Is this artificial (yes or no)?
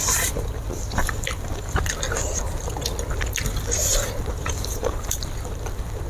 yes